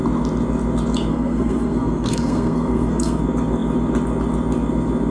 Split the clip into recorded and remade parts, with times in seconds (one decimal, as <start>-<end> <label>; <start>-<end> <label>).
0.0-1.1 recorded; 1.1-3.2 remade; 3.2-5.1 recorded